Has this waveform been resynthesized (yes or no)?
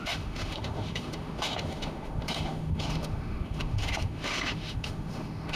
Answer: yes